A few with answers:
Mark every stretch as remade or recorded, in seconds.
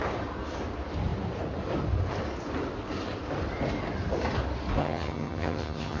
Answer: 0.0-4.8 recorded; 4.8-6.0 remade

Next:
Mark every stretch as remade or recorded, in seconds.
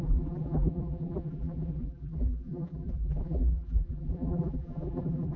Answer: 0.0-5.4 remade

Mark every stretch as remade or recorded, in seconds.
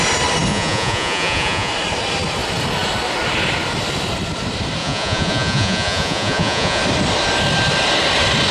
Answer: 0.0-0.5 recorded; 0.5-1.7 remade; 1.7-4.8 recorded; 4.8-6.8 remade; 6.8-8.5 recorded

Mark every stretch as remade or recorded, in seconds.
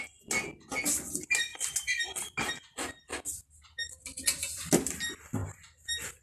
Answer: 0.0-5.4 recorded; 5.4-6.2 remade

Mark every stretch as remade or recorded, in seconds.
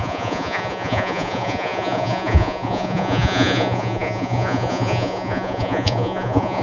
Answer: 0.0-6.6 remade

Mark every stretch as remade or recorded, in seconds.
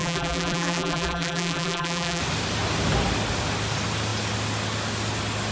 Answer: 0.0-2.2 remade; 2.2-5.5 recorded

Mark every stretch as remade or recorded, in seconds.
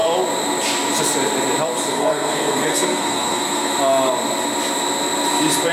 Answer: 0.0-1.9 recorded; 1.9-3.7 remade; 3.7-5.7 recorded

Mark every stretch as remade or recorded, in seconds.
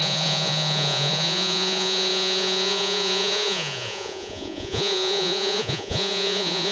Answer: 0.0-6.7 remade